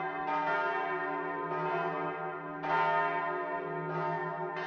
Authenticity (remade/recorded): recorded